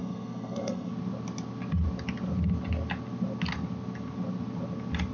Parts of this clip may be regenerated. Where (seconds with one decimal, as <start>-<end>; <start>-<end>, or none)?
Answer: 0.0-0.9